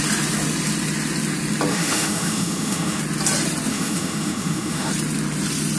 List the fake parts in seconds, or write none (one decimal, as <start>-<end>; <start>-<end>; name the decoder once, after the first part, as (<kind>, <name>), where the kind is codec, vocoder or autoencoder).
1.7-3.0 (autoencoder, DAC-VAE); 3.7-4.9